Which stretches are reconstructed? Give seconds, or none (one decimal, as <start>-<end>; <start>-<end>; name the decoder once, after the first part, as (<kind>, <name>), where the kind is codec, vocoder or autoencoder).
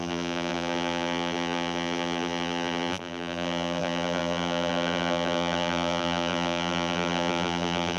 0.0-8.0 (vocoder, BigVGAN v2)